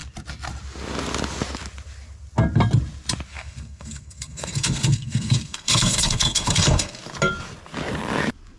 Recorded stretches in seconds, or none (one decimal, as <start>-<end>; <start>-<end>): 0.0-3.3; 7.0-8.6